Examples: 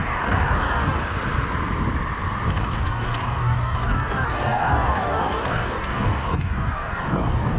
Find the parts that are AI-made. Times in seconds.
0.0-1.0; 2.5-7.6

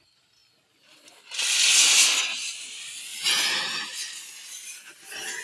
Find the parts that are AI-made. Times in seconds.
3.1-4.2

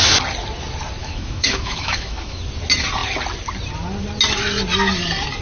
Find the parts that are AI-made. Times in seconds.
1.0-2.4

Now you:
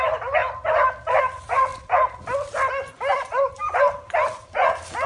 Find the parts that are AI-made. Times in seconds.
0.0-0.4; 1.2-1.7